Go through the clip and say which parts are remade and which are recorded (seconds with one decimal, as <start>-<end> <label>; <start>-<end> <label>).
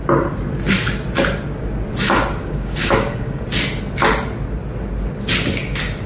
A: 0.0-2.4 recorded; 2.4-3.4 remade; 3.4-6.1 recorded